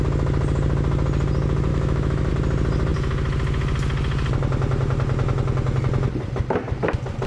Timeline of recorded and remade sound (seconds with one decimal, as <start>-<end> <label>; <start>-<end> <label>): 0.0-1.7 recorded; 1.7-2.3 remade; 2.3-7.3 recorded